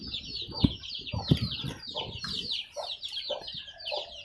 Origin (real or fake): real